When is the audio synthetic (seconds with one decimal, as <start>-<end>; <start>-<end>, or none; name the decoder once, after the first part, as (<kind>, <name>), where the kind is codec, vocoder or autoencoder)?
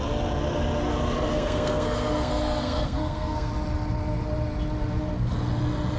1.3-3.5 (codec, SNAC)